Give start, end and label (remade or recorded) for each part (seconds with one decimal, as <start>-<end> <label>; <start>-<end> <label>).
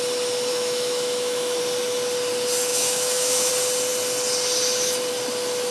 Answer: 0.0-0.5 recorded; 0.5-1.6 remade; 1.6-2.7 recorded; 2.7-3.5 remade; 3.5-5.7 recorded